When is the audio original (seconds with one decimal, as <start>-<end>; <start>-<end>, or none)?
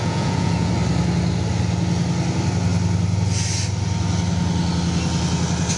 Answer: 0.7-5.8